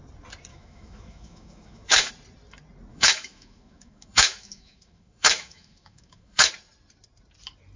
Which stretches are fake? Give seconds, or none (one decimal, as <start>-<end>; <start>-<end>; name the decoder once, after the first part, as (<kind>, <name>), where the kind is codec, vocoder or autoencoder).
0.5-2.1 (autoencoder, DAC-VAE); 2.9-6.5